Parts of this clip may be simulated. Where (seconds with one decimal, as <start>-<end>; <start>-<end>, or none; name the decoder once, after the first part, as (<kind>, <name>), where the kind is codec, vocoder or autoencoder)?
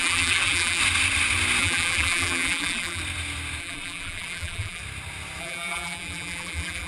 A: 0.0-0.8 (vocoder, BigVGAN v2); 1.6-3.0; 3.6-4.8; 5.4-6.9